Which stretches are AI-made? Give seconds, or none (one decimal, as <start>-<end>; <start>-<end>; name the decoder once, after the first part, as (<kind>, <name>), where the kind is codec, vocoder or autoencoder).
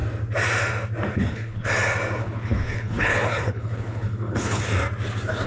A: 1.1-1.7 (codec, HILCodec); 2.2-4.6